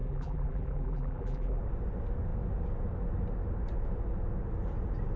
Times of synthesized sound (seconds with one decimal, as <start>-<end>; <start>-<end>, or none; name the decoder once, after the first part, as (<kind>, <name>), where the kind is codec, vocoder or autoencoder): 0.0-1.6 (vocoder, BigVGAN v2)